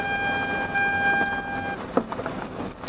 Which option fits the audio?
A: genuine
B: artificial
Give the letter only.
A